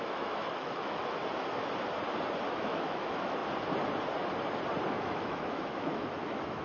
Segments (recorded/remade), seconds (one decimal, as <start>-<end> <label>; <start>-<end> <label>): 0.0-1.2 remade; 1.2-2.5 recorded; 2.5-3.4 remade; 3.4-4.9 recorded; 4.9-6.6 remade